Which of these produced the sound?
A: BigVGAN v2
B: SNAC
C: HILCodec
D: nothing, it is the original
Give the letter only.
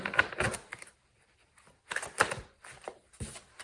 D